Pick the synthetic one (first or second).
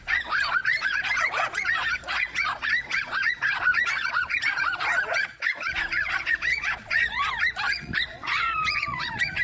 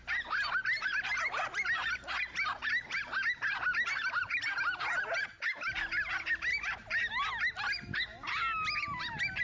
first